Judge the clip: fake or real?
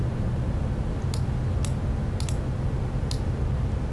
real